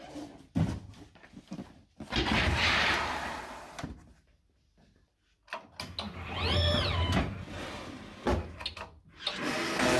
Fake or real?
real